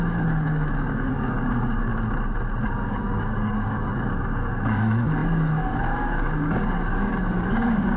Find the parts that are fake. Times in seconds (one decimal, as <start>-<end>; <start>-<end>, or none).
0.0-1.9; 2.7-8.0